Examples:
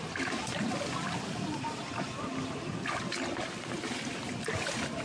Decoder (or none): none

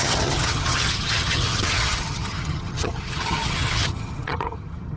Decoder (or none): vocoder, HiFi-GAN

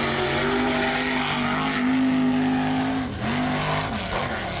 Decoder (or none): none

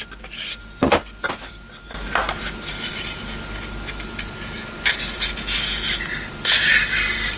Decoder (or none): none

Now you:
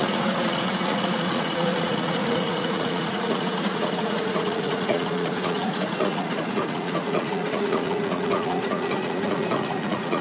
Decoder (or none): vocoder, Vocos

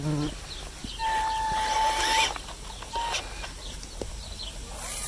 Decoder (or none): none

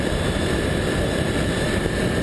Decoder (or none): vocoder, BigVGAN v2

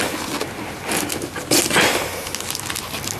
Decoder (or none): none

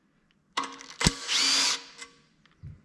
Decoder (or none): none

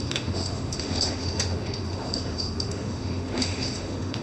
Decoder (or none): autoencoder, DAC-VAE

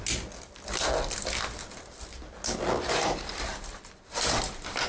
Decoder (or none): none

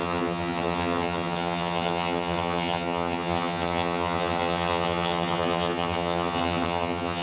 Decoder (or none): vocoder, HiFi-GAN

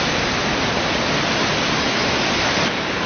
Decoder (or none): none